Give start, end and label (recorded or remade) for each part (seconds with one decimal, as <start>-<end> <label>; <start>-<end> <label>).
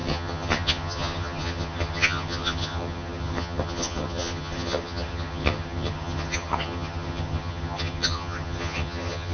0.0-9.3 remade